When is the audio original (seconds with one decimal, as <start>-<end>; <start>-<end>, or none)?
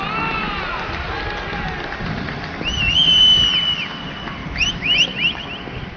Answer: 0.0-4.4; 5.4-6.0